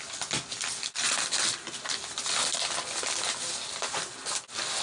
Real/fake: real